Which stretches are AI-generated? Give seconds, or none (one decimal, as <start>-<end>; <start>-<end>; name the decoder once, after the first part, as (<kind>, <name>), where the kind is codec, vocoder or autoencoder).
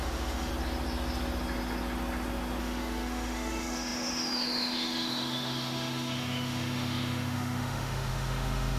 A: 0.0-0.5 (autoencoder, DAC-VAE); 2.6-8.8